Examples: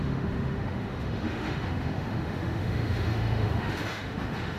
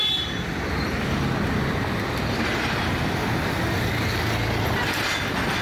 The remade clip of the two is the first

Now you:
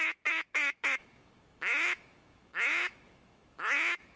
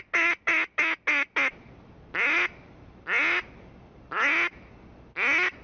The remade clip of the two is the first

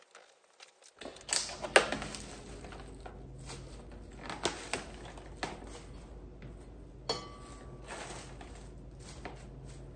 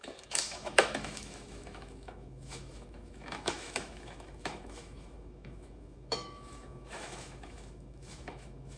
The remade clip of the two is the second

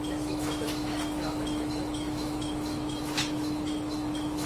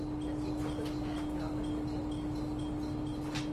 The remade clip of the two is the first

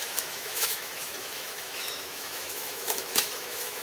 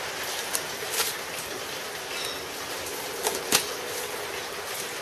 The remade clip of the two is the first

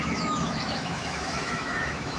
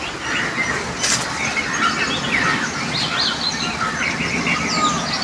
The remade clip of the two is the first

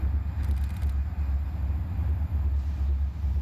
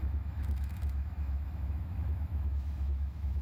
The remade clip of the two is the second